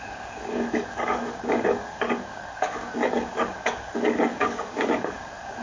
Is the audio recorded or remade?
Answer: remade